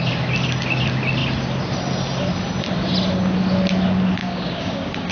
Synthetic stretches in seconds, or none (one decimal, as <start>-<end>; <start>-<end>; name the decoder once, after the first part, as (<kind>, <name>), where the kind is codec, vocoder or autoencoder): 4.2-5.1 (codec, DAC)